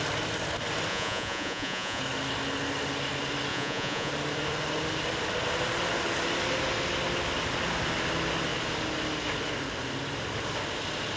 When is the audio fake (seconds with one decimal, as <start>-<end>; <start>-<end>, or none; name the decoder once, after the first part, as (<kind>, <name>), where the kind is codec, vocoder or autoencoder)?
0.9-2.0 (vocoder, Vocos); 3.5-4.1